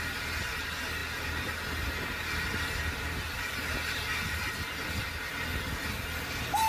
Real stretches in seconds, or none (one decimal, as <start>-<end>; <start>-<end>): 0.0-6.7